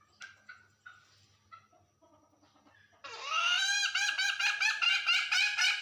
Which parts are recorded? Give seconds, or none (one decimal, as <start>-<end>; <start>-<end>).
0.0-5.8